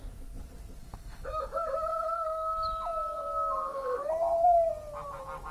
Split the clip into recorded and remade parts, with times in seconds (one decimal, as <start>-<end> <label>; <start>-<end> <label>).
0.0-0.8 recorded; 0.8-4.1 remade; 4.1-5.5 recorded